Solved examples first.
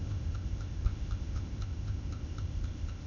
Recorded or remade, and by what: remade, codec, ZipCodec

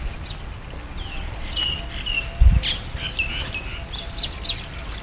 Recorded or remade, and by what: recorded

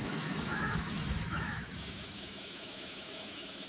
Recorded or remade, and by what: remade, autoencoder, DAC-VAE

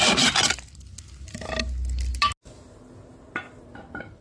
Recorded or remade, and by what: recorded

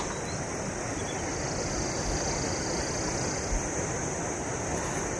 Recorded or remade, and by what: recorded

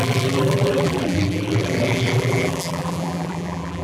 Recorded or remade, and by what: remade, vocoder, BigVGAN v2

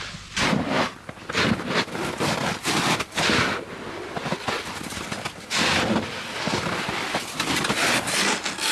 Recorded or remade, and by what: recorded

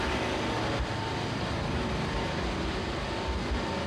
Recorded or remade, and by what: recorded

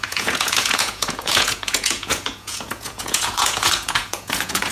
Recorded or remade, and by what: remade, vocoder, Vocos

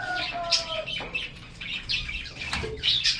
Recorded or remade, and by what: recorded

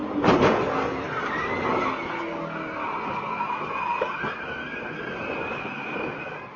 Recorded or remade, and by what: recorded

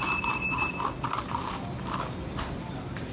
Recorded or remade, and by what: recorded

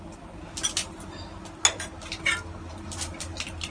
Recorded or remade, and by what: recorded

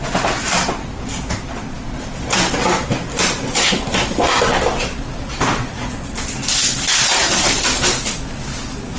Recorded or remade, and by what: recorded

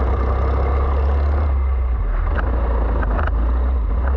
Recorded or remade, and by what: recorded